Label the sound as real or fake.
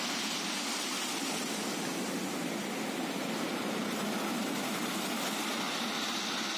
real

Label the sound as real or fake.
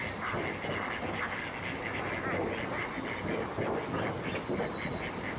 real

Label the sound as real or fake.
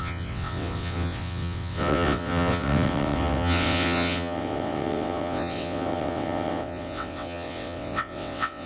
fake